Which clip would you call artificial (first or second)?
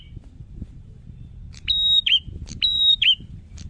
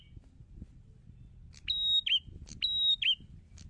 first